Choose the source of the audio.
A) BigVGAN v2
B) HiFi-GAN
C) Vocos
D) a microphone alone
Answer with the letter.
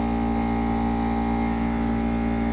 D